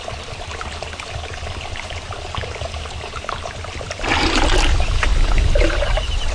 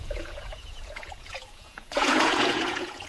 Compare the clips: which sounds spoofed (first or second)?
second